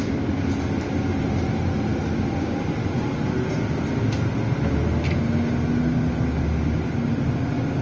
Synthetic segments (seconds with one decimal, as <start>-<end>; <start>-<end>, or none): none